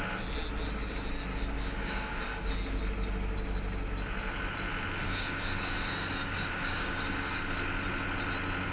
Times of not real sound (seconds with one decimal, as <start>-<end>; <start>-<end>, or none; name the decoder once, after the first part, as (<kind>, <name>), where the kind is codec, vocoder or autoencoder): 1.3-2.5 (codec, DAC); 5.0-7.4